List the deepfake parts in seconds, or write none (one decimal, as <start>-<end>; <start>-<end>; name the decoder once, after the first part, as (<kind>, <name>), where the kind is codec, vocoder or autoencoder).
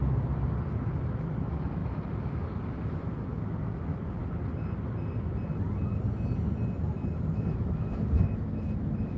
0.9-4.2 (autoencoder, DAC-VAE); 7.3-9.2